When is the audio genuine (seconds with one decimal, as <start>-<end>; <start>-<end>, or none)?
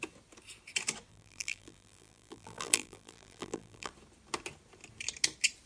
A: 0.0-1.1; 3.9-5.7